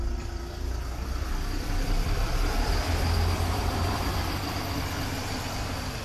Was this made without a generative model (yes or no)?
no